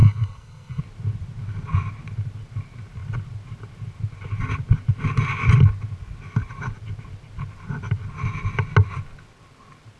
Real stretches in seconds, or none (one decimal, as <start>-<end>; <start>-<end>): 0.8-10.0